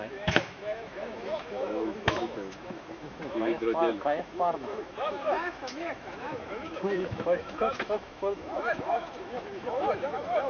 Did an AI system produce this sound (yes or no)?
yes